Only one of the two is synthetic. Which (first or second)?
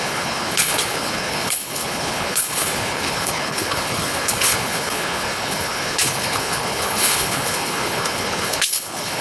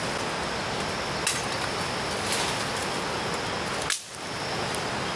first